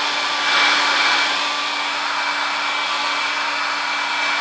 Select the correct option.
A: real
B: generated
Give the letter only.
A